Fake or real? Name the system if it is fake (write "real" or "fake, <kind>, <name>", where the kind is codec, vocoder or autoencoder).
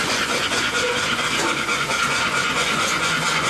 fake, vocoder, Vocos